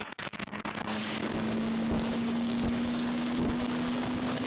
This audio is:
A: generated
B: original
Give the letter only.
A